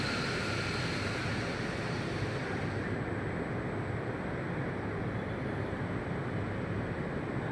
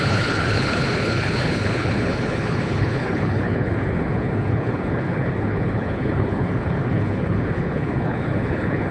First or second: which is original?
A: first